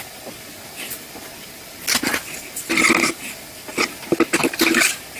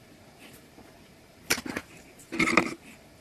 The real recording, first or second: first